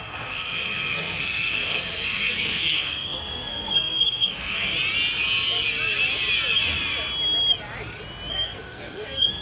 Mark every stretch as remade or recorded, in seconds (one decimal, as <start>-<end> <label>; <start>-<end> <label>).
0.0-4.7 remade; 4.7-8.3 recorded; 8.3-9.4 remade